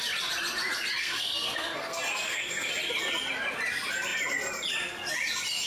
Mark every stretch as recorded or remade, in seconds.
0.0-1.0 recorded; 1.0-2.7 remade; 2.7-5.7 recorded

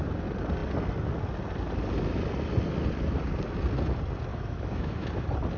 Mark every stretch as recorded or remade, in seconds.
0.0-4.3 recorded; 4.3-5.1 remade; 5.1-5.6 recorded

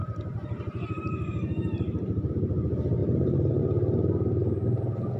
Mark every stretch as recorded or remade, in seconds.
0.0-2.3 remade; 2.3-3.0 recorded; 3.0-3.6 remade; 3.6-5.2 recorded

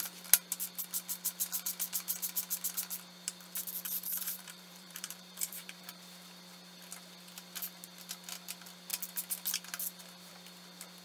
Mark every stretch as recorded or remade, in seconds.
0.0-4.1 recorded; 4.1-5.8 remade; 5.8-11.0 recorded

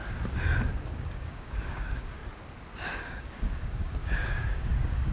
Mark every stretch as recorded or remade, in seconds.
0.0-0.7 recorded; 0.7-2.2 remade; 2.2-2.7 recorded; 2.7-5.1 remade

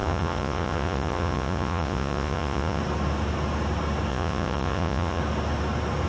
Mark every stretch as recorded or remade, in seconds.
0.0-2.8 remade; 2.8-4.1 recorded; 4.1-5.2 remade; 5.2-6.1 recorded